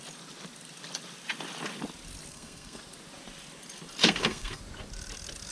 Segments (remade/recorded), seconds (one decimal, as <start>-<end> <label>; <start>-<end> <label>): 0.0-2.3 recorded; 2.3-2.8 remade; 2.8-4.0 recorded; 4.0-4.6 remade; 4.6-5.5 recorded